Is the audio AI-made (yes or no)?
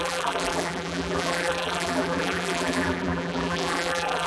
yes